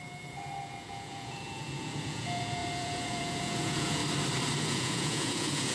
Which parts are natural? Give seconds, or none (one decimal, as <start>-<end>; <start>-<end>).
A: 4.0-4.6